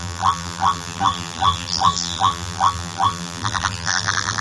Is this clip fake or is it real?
fake